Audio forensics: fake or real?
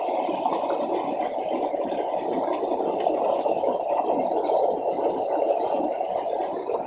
real